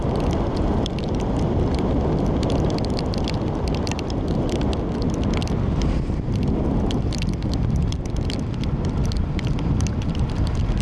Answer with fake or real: real